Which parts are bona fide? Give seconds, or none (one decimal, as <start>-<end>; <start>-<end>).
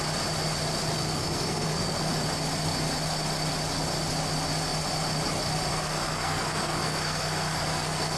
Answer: 0.0-0.9; 2.1-5.7